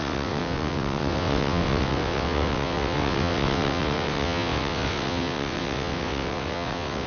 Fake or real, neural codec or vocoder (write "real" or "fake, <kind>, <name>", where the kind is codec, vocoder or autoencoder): fake, vocoder, WaveNeXt